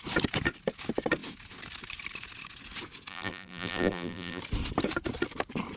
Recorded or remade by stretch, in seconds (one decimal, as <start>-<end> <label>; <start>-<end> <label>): 0.0-3.1 recorded; 3.1-4.4 remade; 4.4-5.8 recorded